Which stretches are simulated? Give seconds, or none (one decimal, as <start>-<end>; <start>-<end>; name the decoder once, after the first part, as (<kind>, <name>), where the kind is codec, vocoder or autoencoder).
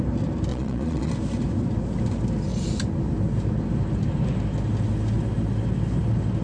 0.5-1.1 (vocoder, Vocos)